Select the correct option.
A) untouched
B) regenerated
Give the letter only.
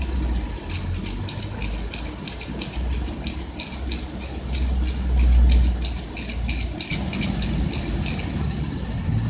A